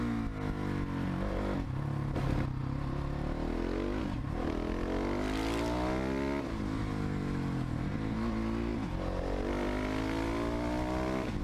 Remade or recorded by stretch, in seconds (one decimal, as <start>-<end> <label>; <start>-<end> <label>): 0.0-11.4 recorded